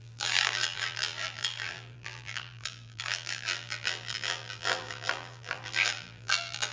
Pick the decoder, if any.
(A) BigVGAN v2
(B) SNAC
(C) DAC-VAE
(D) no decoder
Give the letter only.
A